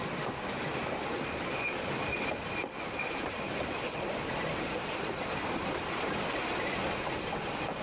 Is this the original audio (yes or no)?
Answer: yes